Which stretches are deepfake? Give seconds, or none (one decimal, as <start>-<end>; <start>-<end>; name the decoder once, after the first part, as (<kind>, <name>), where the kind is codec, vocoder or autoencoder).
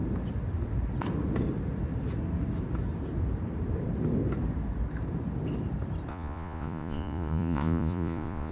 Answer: 6.1-8.5 (vocoder, Vocos)